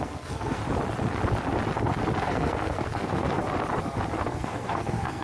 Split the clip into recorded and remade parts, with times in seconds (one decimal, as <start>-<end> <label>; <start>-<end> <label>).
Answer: 0.0-0.6 remade; 0.6-2.2 recorded; 2.2-3.4 remade; 3.4-4.2 recorded; 4.2-5.2 remade